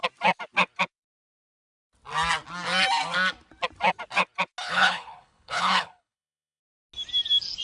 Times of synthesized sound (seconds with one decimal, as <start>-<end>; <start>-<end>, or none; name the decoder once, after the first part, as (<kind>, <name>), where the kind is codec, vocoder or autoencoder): 4.6-6.6 (codec, HILCodec)